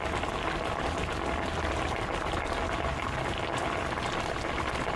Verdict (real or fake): real